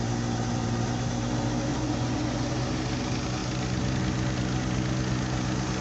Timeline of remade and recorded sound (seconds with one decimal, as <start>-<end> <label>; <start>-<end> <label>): 0.0-1.7 recorded; 1.7-2.5 remade; 2.5-5.8 recorded